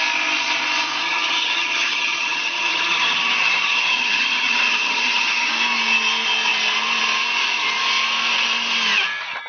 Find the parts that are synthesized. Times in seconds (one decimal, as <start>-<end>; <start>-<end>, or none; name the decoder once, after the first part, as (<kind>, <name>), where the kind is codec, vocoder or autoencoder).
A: 1.0-5.5 (vocoder, HiFi-GAN)